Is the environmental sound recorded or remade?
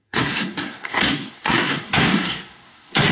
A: remade